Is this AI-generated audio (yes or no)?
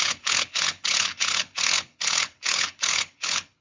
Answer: yes